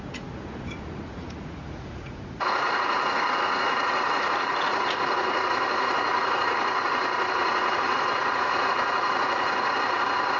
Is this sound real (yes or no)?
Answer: no